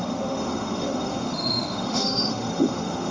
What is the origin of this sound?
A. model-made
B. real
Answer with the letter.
A